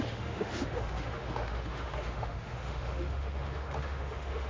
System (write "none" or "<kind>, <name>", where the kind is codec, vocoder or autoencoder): autoencoder, DAC-VAE